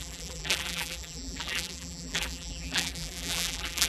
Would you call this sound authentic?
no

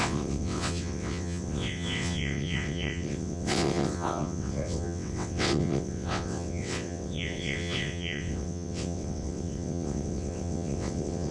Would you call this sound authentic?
no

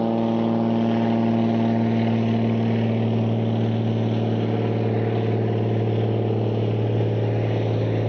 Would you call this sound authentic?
yes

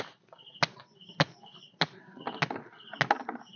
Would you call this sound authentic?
yes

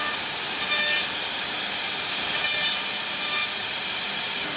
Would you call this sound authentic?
no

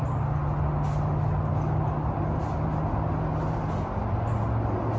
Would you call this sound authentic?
yes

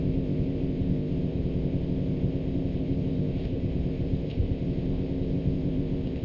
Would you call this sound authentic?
no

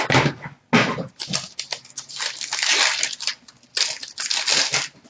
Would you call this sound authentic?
yes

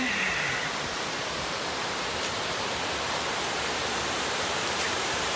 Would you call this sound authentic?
no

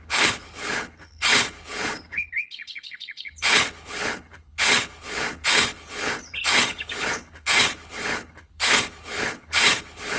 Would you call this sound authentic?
no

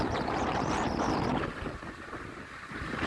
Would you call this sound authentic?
yes